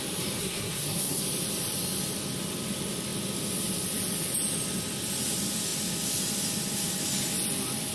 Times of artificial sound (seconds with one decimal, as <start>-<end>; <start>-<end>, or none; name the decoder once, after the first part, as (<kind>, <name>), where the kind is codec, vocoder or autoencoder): 0.4-1.2 (codec, SNAC)